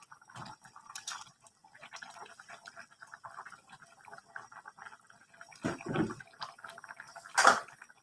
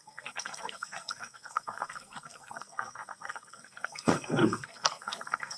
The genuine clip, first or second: first